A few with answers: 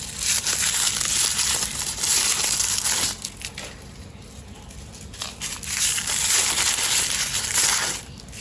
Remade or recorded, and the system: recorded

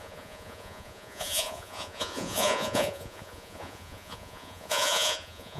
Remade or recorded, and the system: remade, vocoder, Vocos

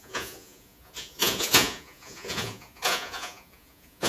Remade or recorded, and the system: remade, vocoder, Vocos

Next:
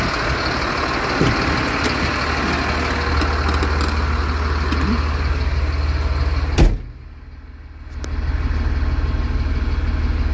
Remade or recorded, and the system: recorded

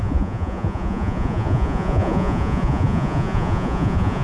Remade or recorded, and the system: remade, vocoder, Vocos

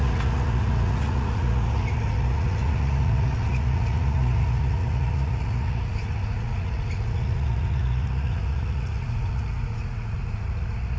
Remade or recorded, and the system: remade, vocoder, Vocos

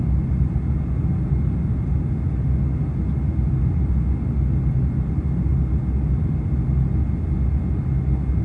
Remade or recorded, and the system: recorded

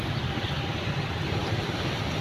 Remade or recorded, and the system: recorded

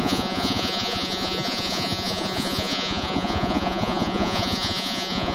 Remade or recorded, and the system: remade, vocoder, Vocos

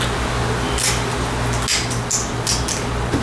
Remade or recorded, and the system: recorded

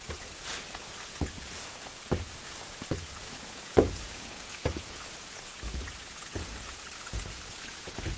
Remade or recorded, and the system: remade, vocoder, Vocos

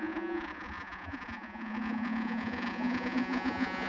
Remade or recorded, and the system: remade, vocoder, Vocos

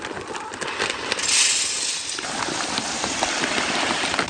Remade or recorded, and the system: recorded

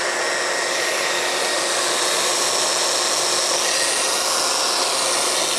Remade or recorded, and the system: recorded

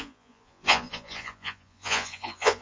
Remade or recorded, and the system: remade, vocoder, Vocos